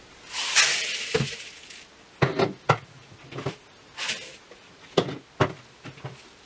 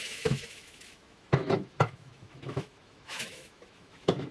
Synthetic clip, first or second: second